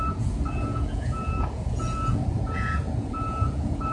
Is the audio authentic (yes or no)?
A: no